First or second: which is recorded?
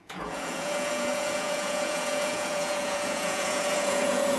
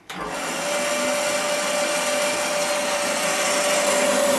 second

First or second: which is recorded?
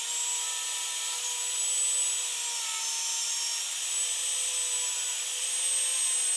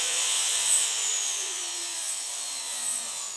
first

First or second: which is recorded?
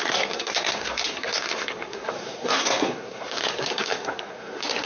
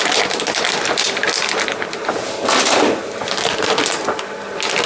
second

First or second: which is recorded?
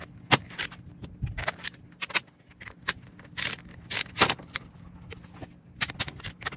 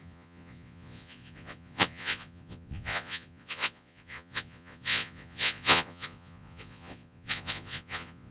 first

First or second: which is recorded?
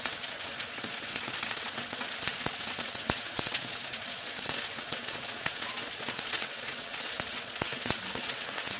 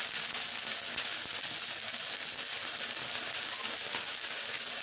second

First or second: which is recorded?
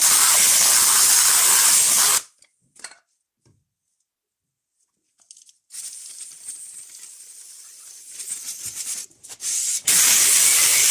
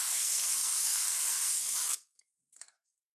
first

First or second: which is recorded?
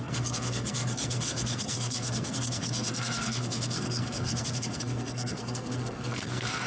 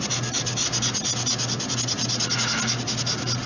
second